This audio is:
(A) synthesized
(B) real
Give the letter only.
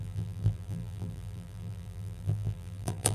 A